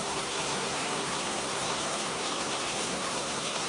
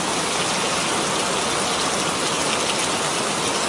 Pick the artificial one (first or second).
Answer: first